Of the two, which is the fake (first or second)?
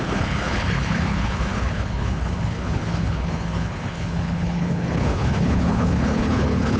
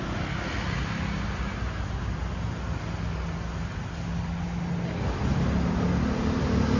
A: first